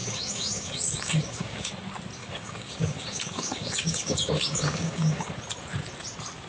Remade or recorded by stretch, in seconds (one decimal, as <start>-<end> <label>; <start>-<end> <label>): 0.0-1.7 remade; 1.7-2.2 recorded; 2.2-5.3 remade; 5.3-6.5 recorded